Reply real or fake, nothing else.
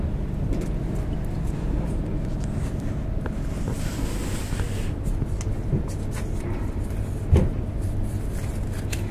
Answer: real